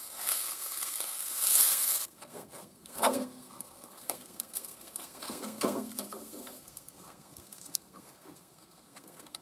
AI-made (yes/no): yes